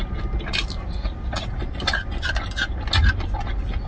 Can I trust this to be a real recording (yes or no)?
yes